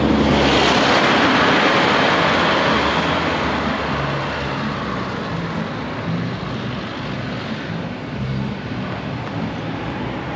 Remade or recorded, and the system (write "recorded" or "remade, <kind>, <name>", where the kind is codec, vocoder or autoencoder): recorded